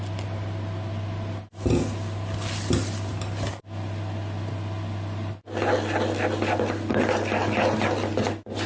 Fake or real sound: real